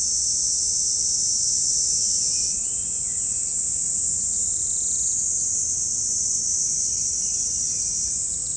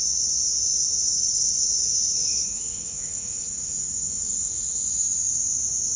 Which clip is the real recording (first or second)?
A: first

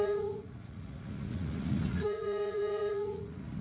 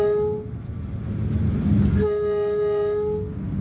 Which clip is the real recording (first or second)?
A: second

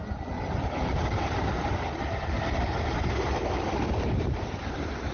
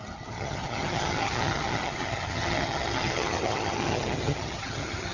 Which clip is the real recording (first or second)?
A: first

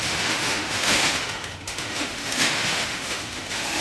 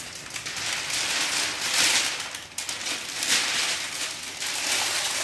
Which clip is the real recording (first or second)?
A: second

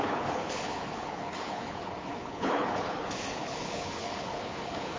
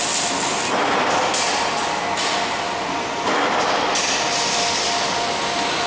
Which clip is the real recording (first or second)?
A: second